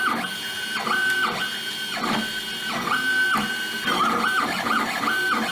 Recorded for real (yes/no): yes